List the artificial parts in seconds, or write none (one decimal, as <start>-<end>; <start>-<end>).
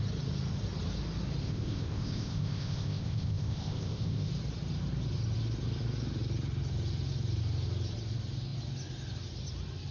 1.4-4.3